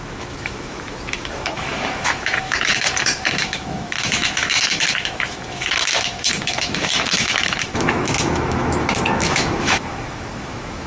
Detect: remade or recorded remade